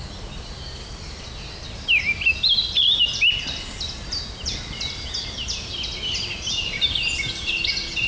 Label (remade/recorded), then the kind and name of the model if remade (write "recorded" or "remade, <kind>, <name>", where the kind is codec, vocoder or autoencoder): recorded